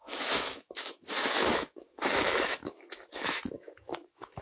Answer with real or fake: fake